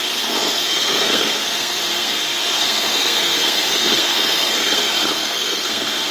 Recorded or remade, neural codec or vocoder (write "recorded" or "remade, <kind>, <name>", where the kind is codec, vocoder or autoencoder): remade, codec, SNAC